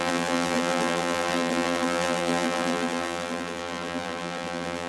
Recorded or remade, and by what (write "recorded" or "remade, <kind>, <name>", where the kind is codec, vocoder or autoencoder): remade, vocoder, BigVGAN v2